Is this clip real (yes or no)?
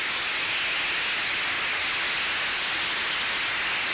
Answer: yes